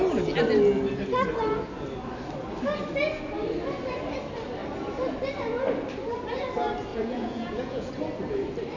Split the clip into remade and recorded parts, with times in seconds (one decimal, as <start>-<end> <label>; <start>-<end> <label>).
0.0-6.9 recorded; 6.9-7.9 remade; 7.9-8.8 recorded